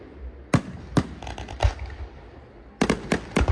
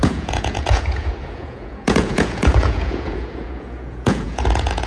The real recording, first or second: first